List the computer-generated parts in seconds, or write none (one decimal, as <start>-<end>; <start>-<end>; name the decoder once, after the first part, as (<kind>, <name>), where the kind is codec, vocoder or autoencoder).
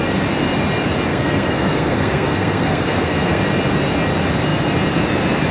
1.1-3.4 (codec, SNAC)